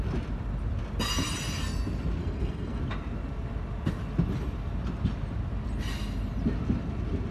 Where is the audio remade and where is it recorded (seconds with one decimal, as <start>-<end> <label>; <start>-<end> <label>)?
0.0-2.2 recorded; 2.2-2.8 remade; 2.8-7.3 recorded